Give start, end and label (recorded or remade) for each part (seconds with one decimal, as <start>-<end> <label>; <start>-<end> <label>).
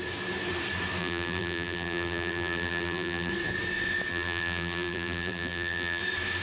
0.0-1.0 recorded; 1.0-3.3 remade; 3.3-4.1 recorded; 4.1-6.0 remade; 6.0-6.4 recorded